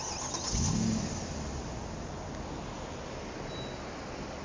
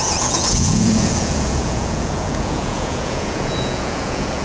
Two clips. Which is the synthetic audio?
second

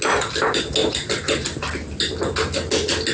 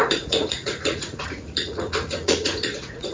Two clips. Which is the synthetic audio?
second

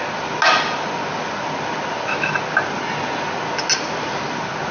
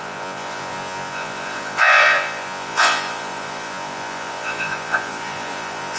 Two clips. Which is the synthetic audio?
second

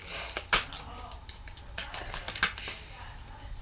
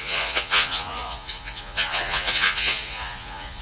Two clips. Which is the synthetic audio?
second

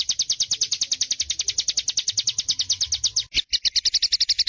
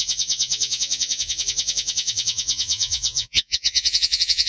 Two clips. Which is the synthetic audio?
second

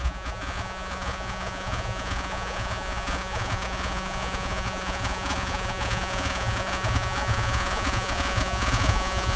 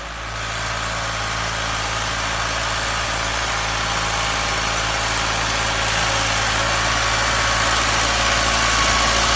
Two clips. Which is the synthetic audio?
first